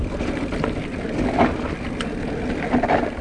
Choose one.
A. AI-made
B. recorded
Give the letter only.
B